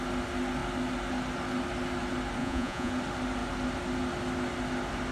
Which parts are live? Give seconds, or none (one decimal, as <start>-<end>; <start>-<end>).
0.0-2.4; 2.9-5.1